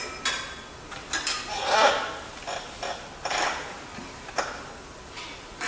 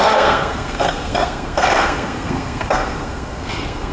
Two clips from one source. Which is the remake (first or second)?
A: second